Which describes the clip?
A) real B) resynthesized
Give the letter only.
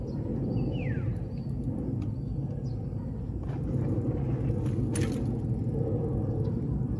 A